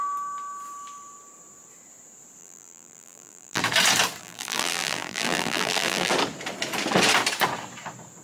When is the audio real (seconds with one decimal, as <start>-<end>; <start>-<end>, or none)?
0.0-2.4; 3.6-4.2; 6.1-8.2